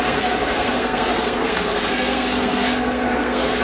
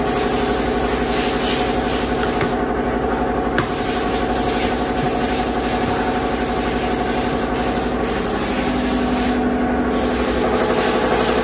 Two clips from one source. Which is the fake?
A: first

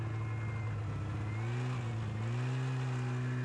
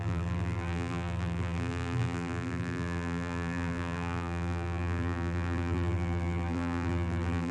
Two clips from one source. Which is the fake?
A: second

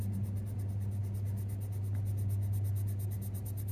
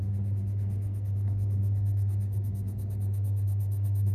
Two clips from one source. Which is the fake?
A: second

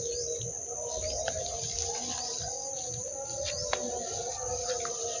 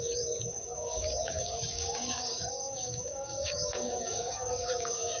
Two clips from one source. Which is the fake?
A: second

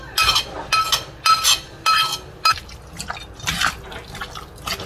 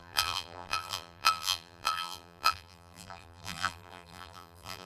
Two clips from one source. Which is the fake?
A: second